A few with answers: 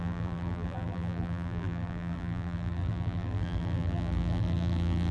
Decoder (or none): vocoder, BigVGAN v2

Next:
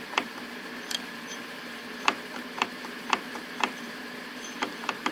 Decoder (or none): vocoder, BigVGAN v2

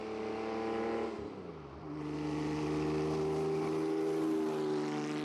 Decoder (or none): none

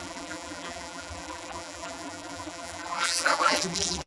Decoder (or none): vocoder, BigVGAN v2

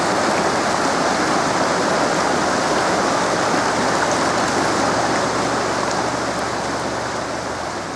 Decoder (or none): none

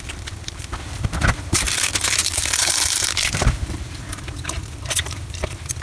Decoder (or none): vocoder, BigVGAN v2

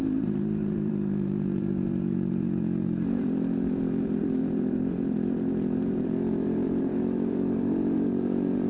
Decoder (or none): vocoder, BigVGAN v2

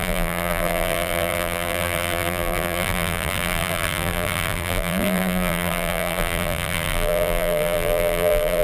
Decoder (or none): vocoder, BigVGAN v2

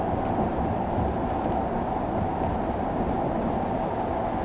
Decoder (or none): none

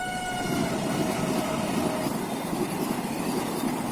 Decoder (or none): none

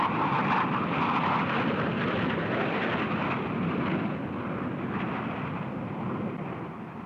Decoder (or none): none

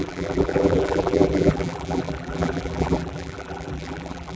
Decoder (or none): vocoder, BigVGAN v2